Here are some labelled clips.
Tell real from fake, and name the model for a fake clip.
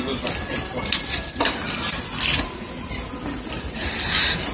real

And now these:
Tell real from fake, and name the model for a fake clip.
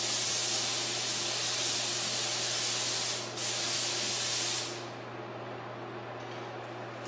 real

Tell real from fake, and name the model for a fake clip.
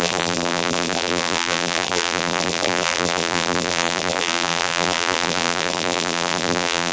fake, vocoder, BigVGAN v2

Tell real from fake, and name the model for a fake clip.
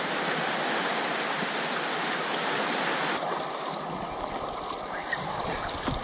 fake, vocoder, BigVGAN v2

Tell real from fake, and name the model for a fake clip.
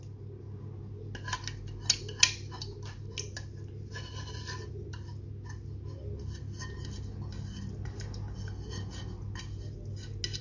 real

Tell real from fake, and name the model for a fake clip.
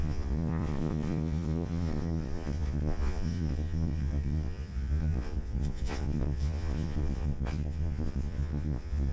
fake, vocoder, Vocos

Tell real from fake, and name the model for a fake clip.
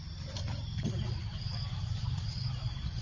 real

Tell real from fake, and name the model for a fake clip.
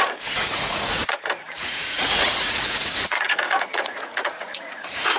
fake, vocoder, Vocos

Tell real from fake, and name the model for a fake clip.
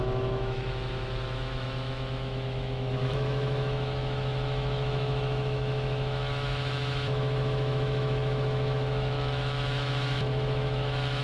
fake, autoencoder, DAC-VAE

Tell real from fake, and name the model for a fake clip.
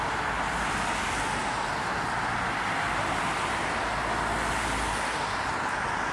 real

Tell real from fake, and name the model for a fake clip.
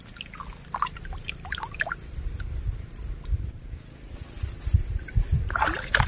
real